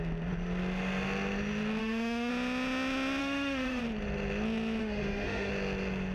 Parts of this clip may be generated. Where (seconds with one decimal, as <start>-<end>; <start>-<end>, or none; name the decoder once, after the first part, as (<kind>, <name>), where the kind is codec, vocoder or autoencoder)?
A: 1.8-2.3 (autoencoder, DAC-VAE); 3.2-3.8; 4.8-5.5